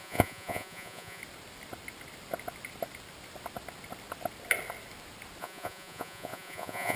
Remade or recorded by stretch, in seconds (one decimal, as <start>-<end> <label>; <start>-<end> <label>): 0.0-1.2 remade; 1.2-5.4 recorded; 5.4-7.0 remade